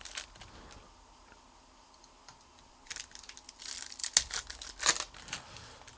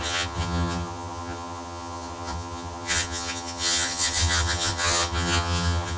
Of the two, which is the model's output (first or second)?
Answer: second